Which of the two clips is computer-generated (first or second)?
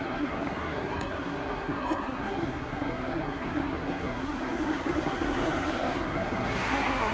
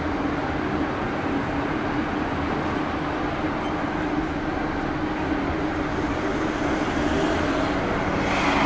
first